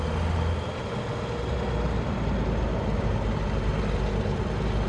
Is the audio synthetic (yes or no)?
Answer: no